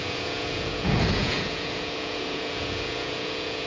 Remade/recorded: remade